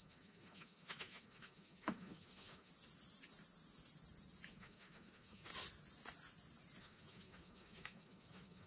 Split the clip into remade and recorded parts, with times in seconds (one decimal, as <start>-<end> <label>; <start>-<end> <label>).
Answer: 0.0-2.7 remade; 2.7-4.5 recorded; 4.5-5.5 remade; 5.5-6.8 recorded; 6.8-8.7 remade